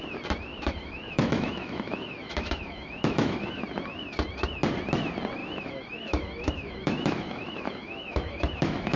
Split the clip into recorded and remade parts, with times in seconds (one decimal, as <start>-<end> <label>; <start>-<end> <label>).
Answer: 0.0-0.5 recorded; 0.5-3.6 remade; 3.6-5.4 recorded; 5.4-9.0 remade

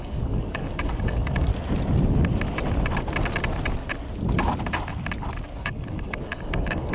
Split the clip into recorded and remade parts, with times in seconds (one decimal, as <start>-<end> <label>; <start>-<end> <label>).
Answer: 0.0-1.5 remade; 1.5-5.6 recorded; 5.6-6.9 remade

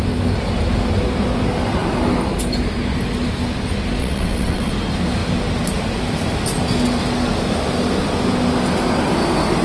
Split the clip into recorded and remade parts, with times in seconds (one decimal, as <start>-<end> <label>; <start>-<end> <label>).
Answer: 0.0-4.0 recorded; 4.0-4.7 remade; 4.7-9.6 recorded

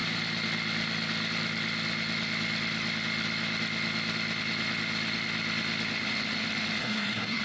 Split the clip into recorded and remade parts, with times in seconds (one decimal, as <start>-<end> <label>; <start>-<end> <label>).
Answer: 0.0-6.8 recorded; 6.8-7.4 remade

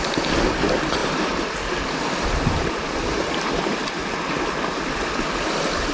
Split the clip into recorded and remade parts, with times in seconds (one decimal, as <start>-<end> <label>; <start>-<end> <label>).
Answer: 0.0-4.0 remade; 4.0-5.1 recorded; 5.1-5.9 remade

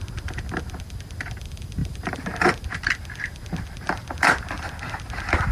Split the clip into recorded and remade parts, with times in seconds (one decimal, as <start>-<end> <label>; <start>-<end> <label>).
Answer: 0.0-1.8 recorded; 1.8-2.5 remade; 2.5-5.5 recorded